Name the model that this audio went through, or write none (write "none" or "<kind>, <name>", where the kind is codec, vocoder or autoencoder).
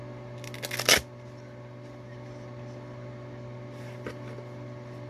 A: none